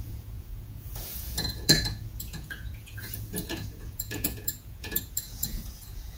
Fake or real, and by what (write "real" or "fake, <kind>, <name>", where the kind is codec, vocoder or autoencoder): fake, vocoder, Vocos